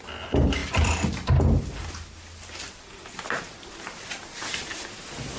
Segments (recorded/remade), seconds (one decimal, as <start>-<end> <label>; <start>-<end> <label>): 0.0-5.4 recorded